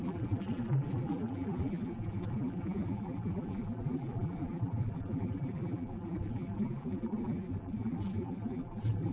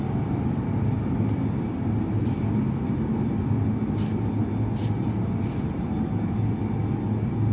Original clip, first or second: second